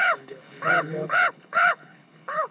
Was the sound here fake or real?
fake